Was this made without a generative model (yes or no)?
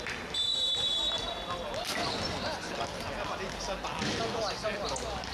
yes